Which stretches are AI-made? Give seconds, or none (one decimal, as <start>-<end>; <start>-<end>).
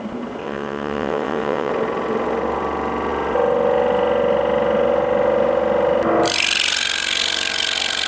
0.4-1.7